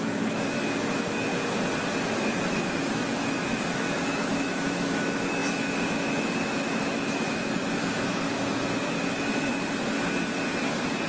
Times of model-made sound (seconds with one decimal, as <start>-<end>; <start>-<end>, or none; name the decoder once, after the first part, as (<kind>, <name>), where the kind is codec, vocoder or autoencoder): 0.0-1.3 (autoencoder, DAC-VAE); 2.1-9.5